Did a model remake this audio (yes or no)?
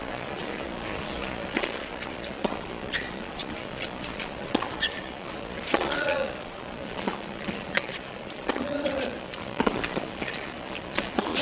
yes